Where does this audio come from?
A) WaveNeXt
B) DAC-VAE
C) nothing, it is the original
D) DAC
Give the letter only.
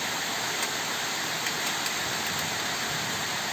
C